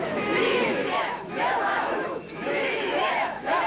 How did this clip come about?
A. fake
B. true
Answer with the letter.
A